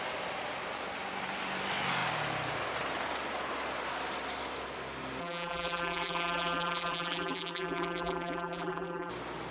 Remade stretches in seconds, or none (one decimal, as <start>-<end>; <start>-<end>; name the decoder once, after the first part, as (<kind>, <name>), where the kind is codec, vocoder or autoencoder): 5.2-9.1 (vocoder, BigVGAN v2)